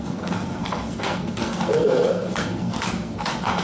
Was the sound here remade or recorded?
remade